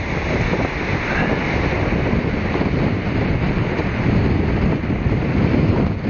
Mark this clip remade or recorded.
recorded